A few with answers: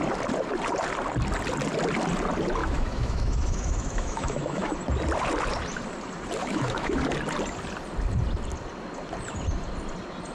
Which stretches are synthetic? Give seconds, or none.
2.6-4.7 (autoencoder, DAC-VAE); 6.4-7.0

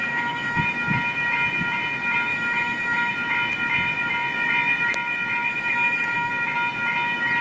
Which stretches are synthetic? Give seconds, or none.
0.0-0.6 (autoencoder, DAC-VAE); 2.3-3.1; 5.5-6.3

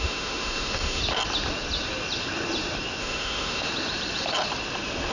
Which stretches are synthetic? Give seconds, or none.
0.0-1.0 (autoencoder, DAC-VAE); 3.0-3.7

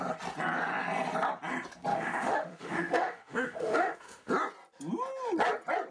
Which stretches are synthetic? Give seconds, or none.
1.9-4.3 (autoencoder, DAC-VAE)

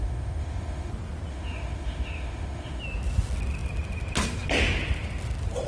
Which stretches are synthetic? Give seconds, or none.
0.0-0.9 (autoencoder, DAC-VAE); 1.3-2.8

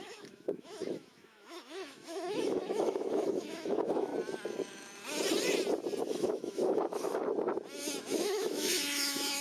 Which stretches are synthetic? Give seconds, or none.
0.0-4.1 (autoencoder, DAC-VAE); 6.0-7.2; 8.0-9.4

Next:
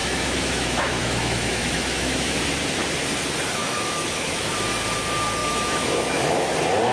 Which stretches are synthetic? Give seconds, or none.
0.0-2.4 (autoencoder, DAC-VAE); 3.6-4.7; 5.4-6.5